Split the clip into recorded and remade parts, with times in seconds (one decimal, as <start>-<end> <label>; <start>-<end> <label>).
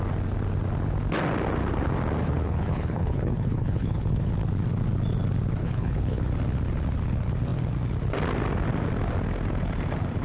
0.0-2.2 recorded; 2.2-4.3 remade; 4.3-5.6 recorded; 5.6-6.3 remade; 6.3-10.2 recorded